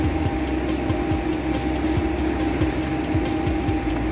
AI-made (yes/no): no